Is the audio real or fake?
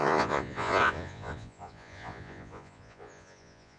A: fake